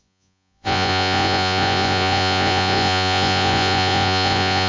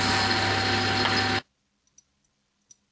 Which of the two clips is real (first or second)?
second